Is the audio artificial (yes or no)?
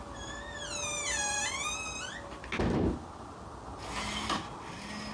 no